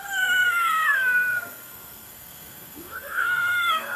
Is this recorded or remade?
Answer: remade